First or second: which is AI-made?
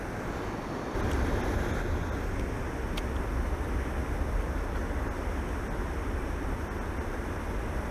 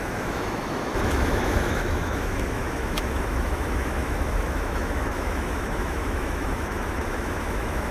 second